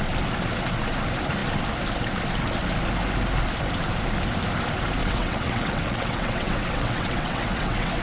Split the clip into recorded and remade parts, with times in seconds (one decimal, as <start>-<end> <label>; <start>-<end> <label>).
0.0-5.0 recorded; 5.0-8.0 remade